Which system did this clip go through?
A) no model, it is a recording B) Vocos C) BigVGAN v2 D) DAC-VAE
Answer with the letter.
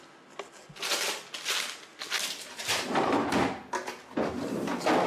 A